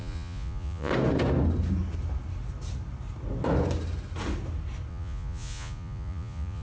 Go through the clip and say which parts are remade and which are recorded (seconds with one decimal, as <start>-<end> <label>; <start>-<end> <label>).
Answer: 0.0-0.9 remade; 0.9-4.9 recorded; 4.9-6.6 remade